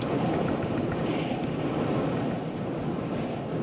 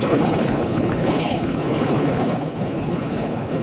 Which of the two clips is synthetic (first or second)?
second